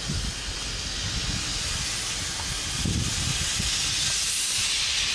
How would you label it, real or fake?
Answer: real